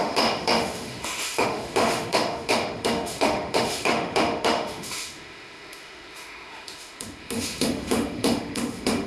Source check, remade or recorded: remade